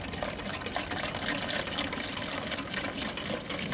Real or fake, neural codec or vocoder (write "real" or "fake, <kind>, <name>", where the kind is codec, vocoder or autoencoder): real